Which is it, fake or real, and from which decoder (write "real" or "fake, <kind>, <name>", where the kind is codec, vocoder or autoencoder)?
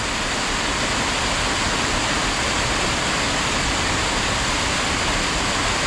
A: real